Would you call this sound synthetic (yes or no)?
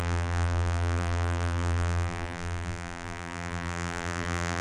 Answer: yes